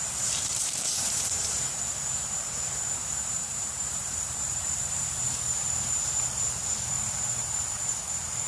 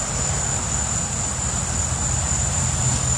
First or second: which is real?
second